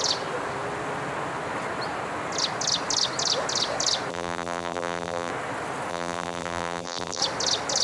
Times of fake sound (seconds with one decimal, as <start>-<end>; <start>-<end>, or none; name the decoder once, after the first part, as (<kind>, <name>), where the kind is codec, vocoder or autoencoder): 4.1-5.3 (vocoder, BigVGAN v2); 5.9-7.2